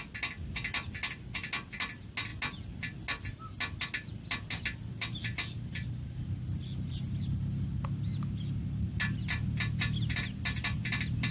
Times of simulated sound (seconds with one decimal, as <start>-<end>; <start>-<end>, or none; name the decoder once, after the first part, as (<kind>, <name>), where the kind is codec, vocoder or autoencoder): none